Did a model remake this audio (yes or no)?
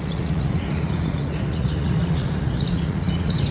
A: yes